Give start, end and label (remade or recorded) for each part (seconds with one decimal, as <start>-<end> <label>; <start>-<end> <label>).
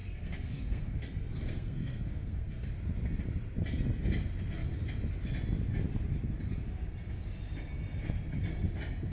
0.0-2.7 remade; 2.7-9.1 recorded